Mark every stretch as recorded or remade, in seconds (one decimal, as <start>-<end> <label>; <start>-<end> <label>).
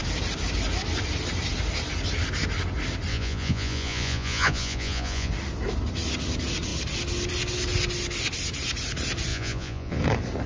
0.0-3.1 recorded; 3.1-5.3 remade; 5.3-9.3 recorded; 9.3-10.0 remade; 10.0-10.5 recorded